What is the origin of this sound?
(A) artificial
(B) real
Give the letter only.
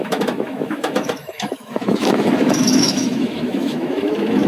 A